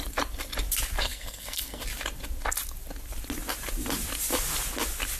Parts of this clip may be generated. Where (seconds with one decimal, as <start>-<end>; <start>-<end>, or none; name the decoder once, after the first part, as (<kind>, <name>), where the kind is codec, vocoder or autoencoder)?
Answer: 1.0-1.8 (codec, SNAC)